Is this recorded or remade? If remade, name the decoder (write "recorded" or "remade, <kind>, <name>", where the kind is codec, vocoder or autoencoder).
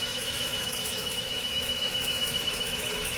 remade, autoencoder, DAC-VAE